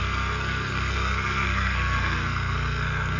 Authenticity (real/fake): fake